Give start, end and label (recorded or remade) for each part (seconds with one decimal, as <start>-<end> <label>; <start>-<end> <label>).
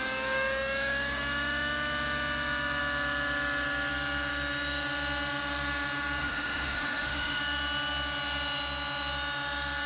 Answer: 0.0-6.2 recorded; 6.2-7.4 remade; 7.4-9.9 recorded